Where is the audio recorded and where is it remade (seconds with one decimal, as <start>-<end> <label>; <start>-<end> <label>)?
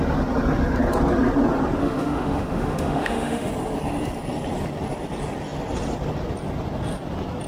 0.0-1.8 recorded; 1.8-3.5 remade; 3.5-7.5 recorded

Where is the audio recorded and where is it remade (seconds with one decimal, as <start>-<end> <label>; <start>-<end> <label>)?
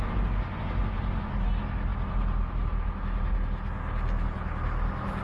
0.0-5.2 recorded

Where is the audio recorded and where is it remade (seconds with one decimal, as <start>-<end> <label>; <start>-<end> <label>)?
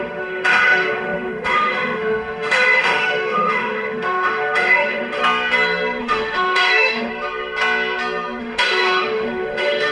0.0-5.2 remade; 5.2-6.0 recorded; 6.0-7.1 remade; 7.1-8.4 recorded; 8.4-9.9 remade